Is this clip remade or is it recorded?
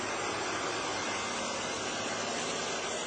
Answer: recorded